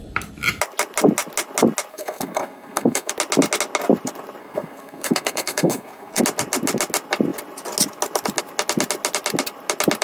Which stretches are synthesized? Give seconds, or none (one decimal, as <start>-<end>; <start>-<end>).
1.9-3.1; 4.4-6.2

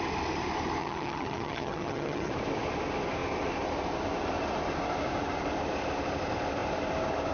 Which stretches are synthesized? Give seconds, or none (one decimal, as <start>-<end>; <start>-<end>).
0.8-2.3